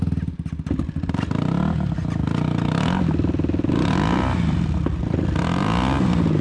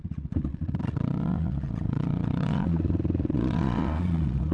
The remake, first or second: second